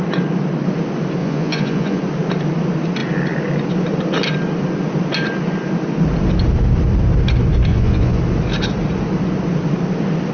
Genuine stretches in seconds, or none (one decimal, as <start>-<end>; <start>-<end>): 0.0-1.2; 2.0-7.7; 8.2-10.3